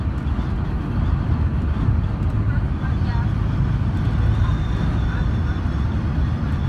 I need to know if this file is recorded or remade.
recorded